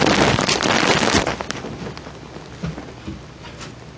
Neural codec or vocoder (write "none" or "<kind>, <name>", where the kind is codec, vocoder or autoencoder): none